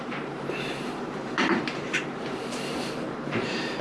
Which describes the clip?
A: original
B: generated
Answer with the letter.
B